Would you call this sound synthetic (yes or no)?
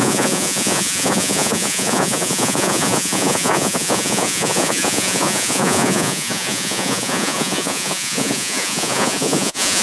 yes